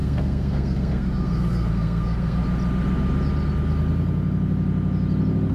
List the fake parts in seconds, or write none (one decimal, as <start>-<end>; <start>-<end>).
0.0-2.4